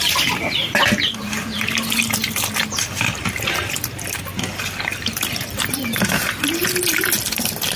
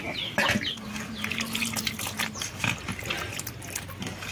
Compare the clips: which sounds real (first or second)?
second